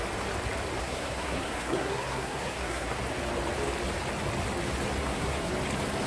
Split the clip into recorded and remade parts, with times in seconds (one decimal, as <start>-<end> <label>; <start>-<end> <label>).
0.0-0.8 recorded; 0.8-3.0 remade; 3.0-5.0 recorded; 5.0-5.5 remade; 5.5-6.1 recorded